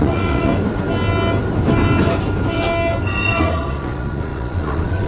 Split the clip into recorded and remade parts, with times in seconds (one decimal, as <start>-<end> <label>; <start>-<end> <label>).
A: 0.0-0.5 remade; 0.5-3.4 recorded; 3.4-5.1 remade